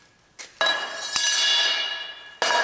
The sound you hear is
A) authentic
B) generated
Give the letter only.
A